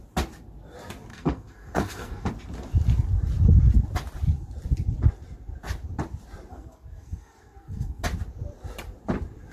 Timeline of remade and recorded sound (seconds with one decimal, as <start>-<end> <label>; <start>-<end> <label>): 0.0-1.1 recorded; 1.1-2.3 remade; 2.3-6.5 recorded; 6.5-8.0 remade; 8.0-9.5 recorded